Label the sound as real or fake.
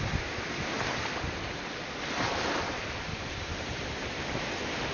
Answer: fake